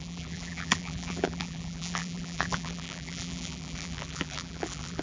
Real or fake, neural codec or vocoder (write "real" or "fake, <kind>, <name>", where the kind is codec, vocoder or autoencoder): fake, vocoder, BigVGAN v2